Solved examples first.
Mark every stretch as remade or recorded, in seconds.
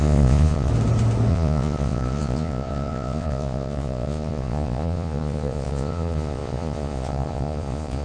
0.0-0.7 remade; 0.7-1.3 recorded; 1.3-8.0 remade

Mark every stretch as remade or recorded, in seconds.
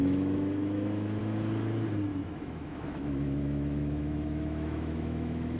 0.0-1.2 remade; 1.2-2.1 recorded; 2.1-5.6 remade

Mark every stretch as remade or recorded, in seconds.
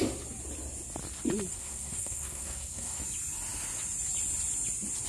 0.0-1.5 recorded; 1.5-3.0 remade; 3.0-5.1 recorded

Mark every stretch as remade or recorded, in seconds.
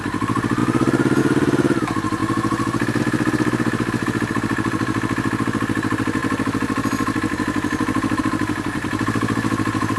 0.0-10.0 recorded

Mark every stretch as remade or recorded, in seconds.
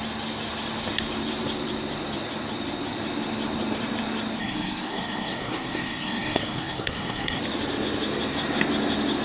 0.0-4.4 recorded; 4.4-7.4 remade; 7.4-9.2 recorded